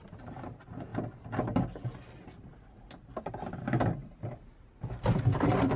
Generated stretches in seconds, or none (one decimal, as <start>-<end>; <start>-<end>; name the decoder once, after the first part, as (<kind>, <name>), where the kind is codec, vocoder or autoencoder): 4.0-5.8 (vocoder, BigVGAN v2)